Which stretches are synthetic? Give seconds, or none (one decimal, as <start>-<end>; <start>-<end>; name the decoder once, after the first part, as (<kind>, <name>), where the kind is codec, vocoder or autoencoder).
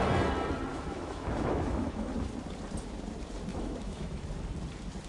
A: 0.7-2.1 (autoencoder, DAC-VAE); 3.5-4.2